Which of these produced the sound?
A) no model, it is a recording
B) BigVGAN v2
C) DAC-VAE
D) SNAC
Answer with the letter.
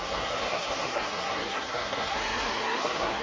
D